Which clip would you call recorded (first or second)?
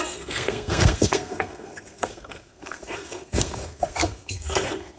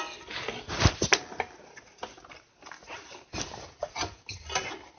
second